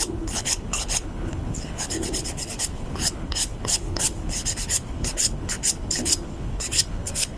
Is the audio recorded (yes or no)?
no